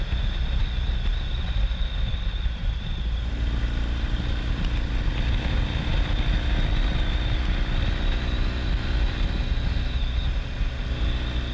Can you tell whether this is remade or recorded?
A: recorded